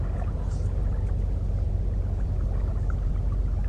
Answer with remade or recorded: recorded